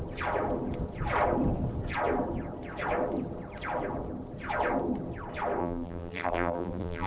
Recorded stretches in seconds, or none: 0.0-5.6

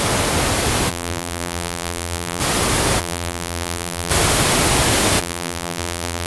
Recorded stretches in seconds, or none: 0.0-0.9; 2.4-3.0; 4.1-5.2

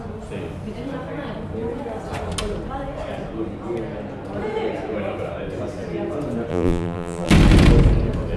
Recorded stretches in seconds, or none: 0.0-6.5; 7.3-8.4

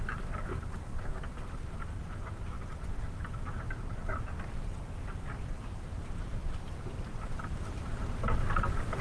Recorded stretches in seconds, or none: 0.0-0.9; 2.7-6.4; 7.8-9.0

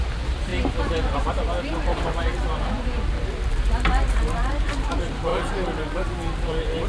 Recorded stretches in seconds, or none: none

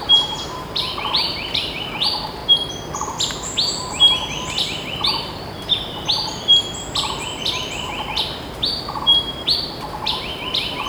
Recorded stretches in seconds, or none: 2.4-7.4